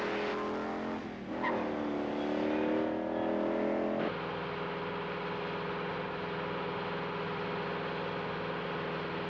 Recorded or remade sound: recorded